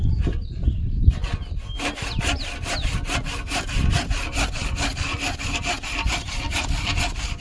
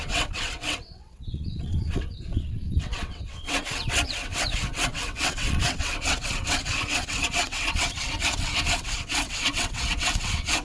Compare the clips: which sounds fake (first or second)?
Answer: second